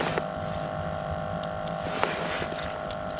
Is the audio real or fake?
real